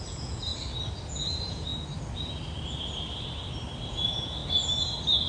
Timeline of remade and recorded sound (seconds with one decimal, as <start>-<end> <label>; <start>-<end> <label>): 0.0-0.5 remade; 0.5-1.1 recorded; 1.1-1.7 remade; 1.7-3.9 recorded; 3.9-4.4 remade; 4.4-5.3 recorded